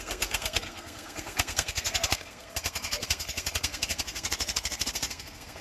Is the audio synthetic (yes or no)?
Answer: yes